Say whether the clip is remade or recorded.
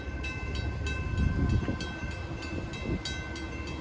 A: recorded